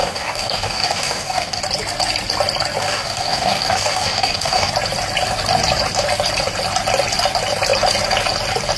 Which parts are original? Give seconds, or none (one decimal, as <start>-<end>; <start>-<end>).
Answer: 1.6-2.8; 4.7-8.8